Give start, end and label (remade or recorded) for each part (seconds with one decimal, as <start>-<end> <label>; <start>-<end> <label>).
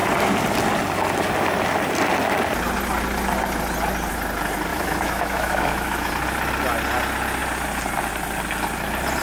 0.0-4.7 recorded; 4.7-6.1 remade; 6.1-9.2 recorded